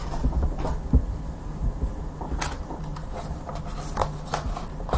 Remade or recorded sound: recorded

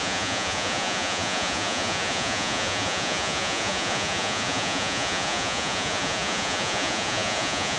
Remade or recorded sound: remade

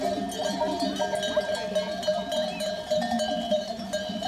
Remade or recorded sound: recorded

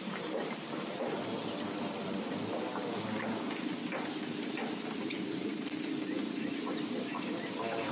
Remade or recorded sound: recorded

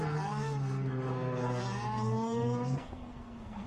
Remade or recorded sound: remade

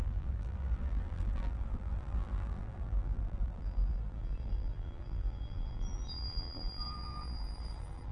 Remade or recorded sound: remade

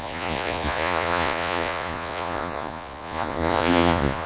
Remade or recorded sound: remade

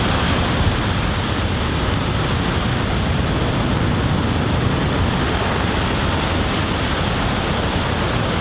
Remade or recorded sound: recorded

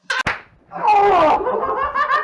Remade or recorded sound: recorded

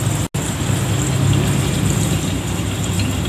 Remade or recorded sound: recorded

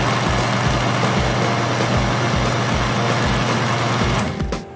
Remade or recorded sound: recorded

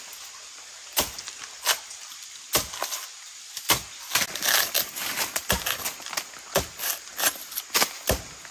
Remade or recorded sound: recorded